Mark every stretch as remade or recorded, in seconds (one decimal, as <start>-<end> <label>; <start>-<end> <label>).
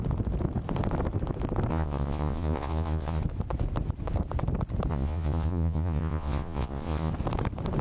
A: 0.0-1.7 recorded; 1.7-3.2 remade; 3.2-4.9 recorded; 4.9-7.1 remade; 7.1-7.8 recorded